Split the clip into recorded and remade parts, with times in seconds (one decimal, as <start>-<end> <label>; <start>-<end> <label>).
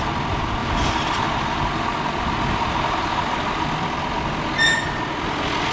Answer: 0.0-5.7 recorded